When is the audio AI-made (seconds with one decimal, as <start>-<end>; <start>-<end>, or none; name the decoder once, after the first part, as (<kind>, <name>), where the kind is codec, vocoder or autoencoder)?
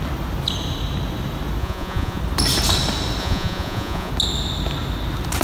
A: 1.6-2.2 (vocoder, Vocos); 3.2-4.1